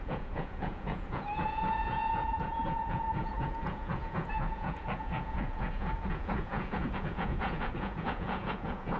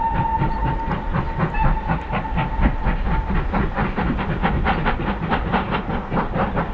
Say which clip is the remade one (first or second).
first